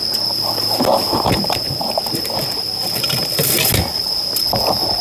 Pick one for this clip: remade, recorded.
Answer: recorded